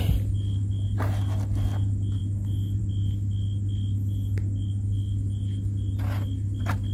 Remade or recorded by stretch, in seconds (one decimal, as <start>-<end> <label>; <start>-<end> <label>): 0.0-6.9 recorded